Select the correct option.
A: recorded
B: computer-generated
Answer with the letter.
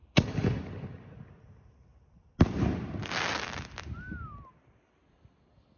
A